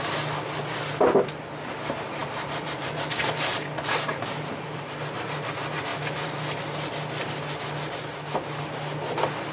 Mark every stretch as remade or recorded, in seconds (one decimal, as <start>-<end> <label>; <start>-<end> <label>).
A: 0.0-2.2 recorded; 2.2-4.8 remade; 4.8-9.5 recorded